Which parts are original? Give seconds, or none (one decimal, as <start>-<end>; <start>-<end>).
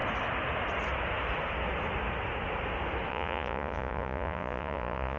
0.0-3.1